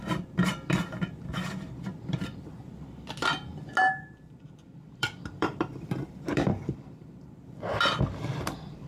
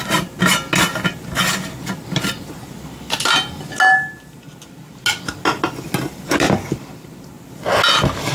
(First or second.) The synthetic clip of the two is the first